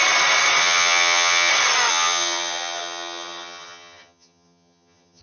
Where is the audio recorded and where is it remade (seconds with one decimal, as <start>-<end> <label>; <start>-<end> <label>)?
0.0-0.6 recorded; 0.6-1.5 remade; 1.5-1.9 recorded; 1.9-5.2 remade